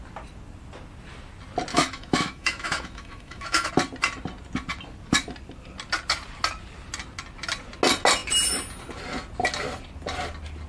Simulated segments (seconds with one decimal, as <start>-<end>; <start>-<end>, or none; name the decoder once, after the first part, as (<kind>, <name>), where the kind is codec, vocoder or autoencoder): 1.7-3.7 (autoencoder, DAC-VAE)